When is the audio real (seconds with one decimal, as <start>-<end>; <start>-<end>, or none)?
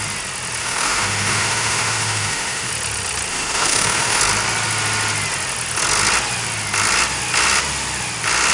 0.0-0.6; 2.7-3.3; 4.2-8.5